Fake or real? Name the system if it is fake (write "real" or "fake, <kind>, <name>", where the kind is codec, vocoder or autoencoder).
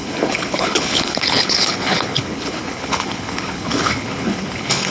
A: fake, codec, HILCodec